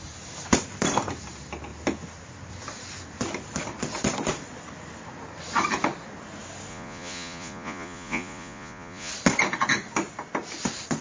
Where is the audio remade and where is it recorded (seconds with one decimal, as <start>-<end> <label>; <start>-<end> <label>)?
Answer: 0.0-6.7 recorded; 6.7-9.1 remade; 9.1-11.0 recorded